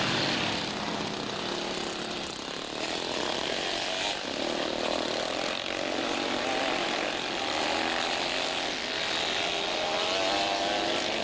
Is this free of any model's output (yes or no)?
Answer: yes